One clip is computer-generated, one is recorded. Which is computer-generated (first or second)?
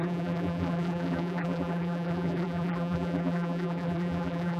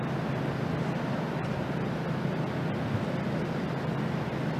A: first